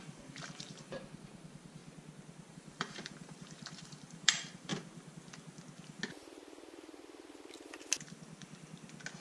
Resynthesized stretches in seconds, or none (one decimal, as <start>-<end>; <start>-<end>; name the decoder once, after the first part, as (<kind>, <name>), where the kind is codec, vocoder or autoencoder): 0.0-1.8 (vocoder, BigVGAN v2); 2.5-4.7